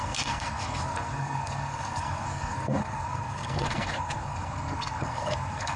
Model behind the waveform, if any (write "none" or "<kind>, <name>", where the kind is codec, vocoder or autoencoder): codec, SNAC